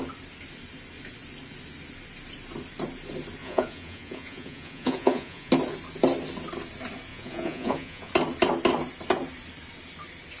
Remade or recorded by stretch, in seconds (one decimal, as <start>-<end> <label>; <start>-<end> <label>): 0.0-3.4 recorded; 3.4-5.5 remade; 5.5-7.1 recorded; 7.1-8.1 remade; 8.1-10.4 recorded